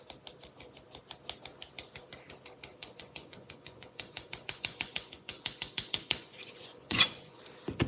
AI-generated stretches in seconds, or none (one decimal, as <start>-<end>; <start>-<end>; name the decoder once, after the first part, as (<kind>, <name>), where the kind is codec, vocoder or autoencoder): 2.8-7.4 (vocoder, Vocos)